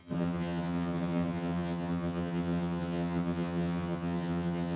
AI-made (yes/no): yes